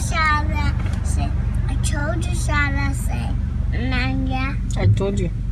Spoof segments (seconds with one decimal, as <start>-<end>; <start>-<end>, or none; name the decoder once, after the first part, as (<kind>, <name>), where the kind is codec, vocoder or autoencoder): none